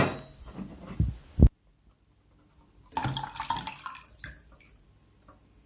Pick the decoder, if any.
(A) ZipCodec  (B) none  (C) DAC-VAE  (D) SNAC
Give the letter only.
B